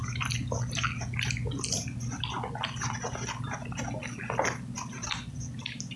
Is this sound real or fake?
real